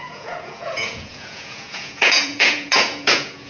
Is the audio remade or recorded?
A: remade